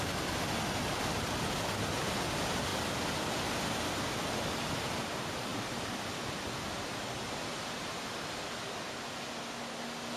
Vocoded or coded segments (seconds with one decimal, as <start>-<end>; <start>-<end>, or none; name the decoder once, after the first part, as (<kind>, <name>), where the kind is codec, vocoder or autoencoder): none